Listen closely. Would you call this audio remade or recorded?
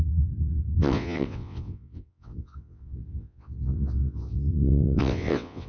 remade